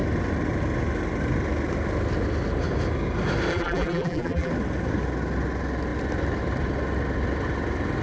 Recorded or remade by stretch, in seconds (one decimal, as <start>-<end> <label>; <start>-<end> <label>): 0.0-3.5 recorded; 3.5-4.5 remade; 4.5-8.0 recorded